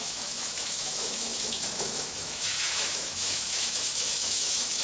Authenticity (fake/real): fake